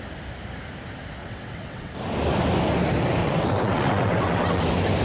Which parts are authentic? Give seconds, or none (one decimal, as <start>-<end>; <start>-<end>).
0.0-1.2; 1.9-3.2; 4.6-5.0